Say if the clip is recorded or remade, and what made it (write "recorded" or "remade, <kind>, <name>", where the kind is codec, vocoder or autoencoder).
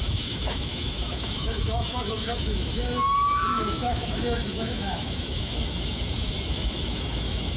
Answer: remade, autoencoder, DAC-VAE